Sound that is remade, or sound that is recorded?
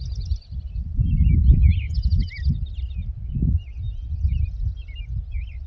recorded